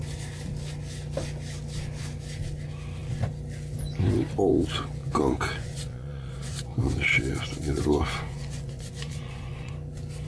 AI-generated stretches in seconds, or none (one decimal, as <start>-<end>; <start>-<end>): 5.0-9.7